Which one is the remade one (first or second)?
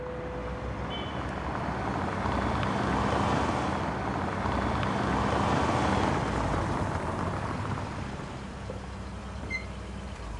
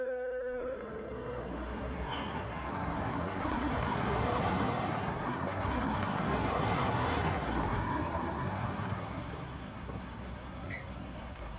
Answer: second